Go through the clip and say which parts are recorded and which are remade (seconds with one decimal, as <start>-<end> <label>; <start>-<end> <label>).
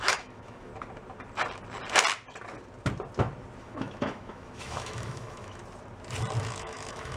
0.0-0.7 remade; 0.7-3.6 recorded; 3.6-5.6 remade; 5.6-6.4 recorded; 6.4-7.2 remade